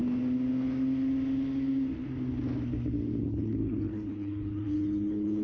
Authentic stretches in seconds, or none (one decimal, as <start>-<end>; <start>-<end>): 0.0-3.2